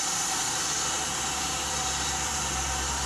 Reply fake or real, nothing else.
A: real